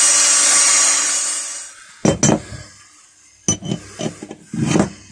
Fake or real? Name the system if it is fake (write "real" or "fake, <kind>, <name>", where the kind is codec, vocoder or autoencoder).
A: real